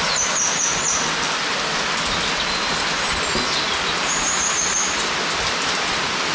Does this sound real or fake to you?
real